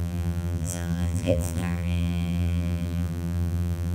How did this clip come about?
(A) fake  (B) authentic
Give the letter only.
A